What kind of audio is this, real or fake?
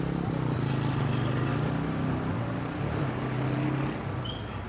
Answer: real